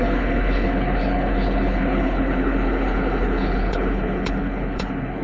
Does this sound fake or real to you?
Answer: fake